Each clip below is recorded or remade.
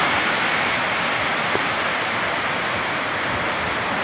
recorded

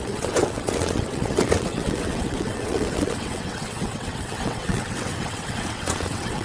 remade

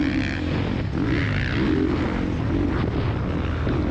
recorded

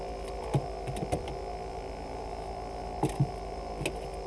recorded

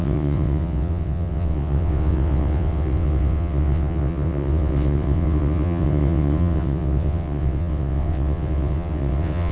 remade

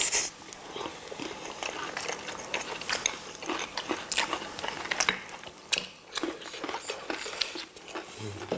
recorded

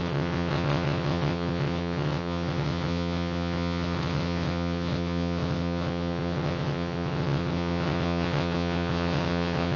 remade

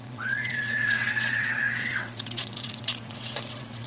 remade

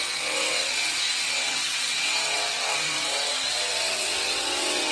remade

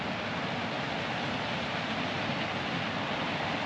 recorded